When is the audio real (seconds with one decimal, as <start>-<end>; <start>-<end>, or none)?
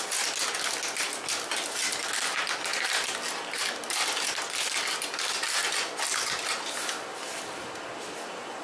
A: 0.0-8.6